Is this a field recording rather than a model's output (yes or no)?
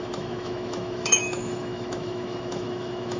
no